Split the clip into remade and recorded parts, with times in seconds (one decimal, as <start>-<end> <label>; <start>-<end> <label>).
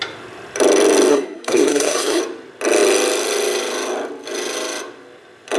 0.0-1.1 recorded; 1.1-2.2 remade; 2.2-5.6 recorded